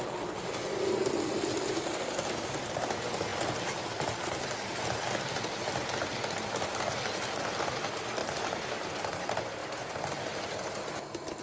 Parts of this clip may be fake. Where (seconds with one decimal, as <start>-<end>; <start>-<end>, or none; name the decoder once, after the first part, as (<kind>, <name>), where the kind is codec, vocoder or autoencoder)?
8.2-8.9 (vocoder, BigVGAN v2)